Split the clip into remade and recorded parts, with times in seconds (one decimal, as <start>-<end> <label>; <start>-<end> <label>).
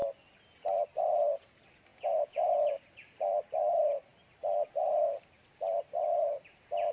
0.0-1.9 recorded; 1.9-2.7 remade; 2.7-6.9 recorded